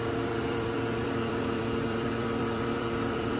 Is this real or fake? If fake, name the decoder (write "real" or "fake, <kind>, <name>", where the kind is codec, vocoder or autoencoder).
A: fake, vocoder, BigVGAN v2